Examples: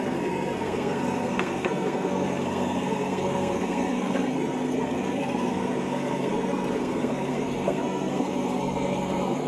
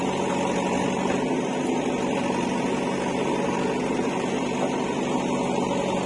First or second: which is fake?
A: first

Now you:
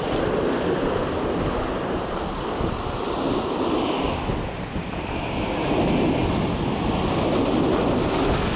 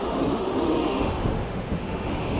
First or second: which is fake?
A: second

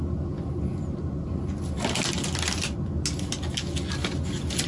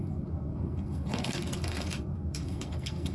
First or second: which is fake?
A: second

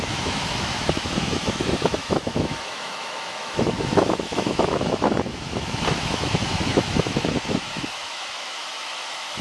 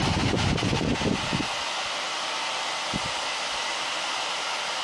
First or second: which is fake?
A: first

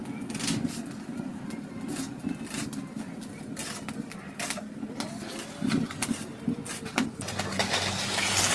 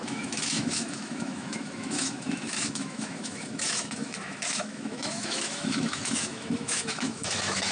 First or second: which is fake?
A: second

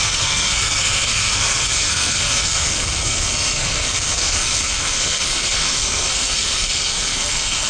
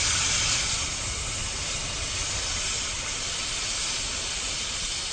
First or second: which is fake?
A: first